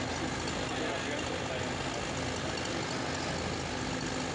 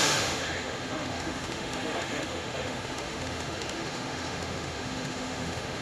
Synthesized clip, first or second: second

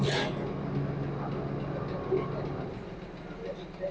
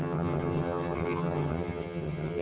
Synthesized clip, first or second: second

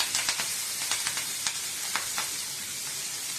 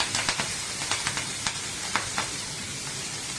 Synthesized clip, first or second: second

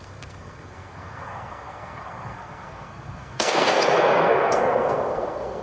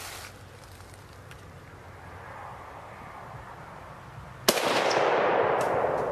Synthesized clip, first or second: first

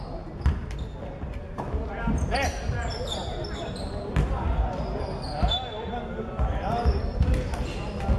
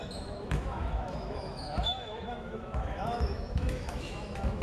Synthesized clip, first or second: second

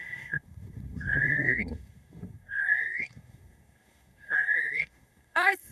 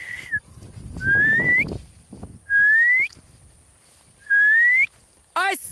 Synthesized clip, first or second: first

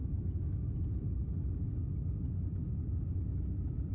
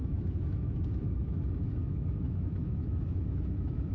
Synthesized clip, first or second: second